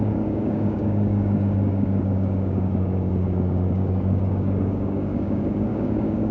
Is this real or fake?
fake